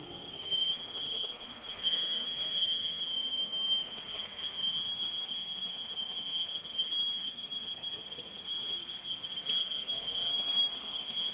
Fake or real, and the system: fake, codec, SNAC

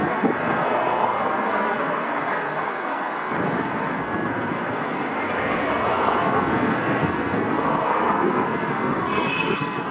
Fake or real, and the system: fake, codec, SNAC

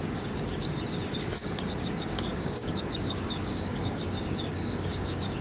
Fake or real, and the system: fake, codec, DAC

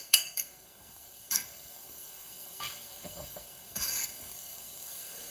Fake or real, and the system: fake, codec, SNAC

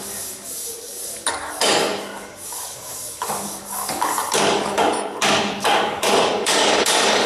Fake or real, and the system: fake, codec, DAC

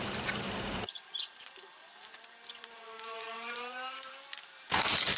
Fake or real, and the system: fake, vocoder, BigVGAN v2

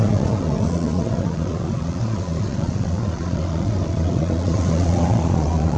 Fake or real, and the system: fake, vocoder, Vocos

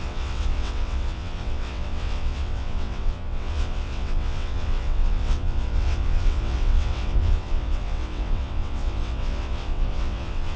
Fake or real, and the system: fake, vocoder, WaveNeXt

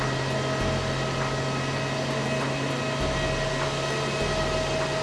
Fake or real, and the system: real